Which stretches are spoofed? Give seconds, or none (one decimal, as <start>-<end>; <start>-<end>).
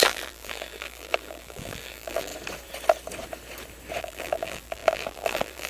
0.0-2.3; 4.0-5.7